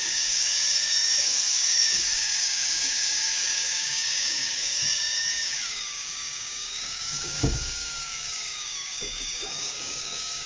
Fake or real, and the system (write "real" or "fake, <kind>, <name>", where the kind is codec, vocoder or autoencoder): fake, codec, DAC